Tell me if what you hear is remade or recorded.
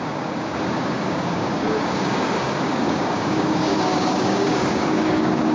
remade